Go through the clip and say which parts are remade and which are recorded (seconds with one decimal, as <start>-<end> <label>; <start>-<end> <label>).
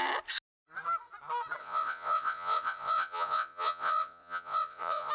0.0-1.6 recorded; 1.6-5.1 remade